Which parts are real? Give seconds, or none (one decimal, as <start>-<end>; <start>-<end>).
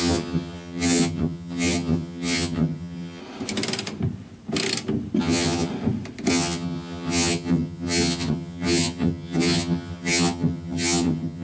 3.2-5.2; 5.7-6.3